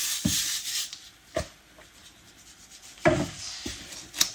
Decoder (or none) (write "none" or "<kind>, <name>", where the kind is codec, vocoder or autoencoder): vocoder, BigVGAN v2